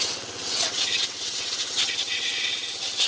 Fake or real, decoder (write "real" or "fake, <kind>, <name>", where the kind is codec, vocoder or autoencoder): fake, vocoder, WaveNeXt